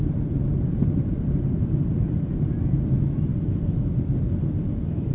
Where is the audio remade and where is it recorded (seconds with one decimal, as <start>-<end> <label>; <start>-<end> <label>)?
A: 0.0-0.5 recorded; 0.5-2.4 remade; 2.4-5.1 recorded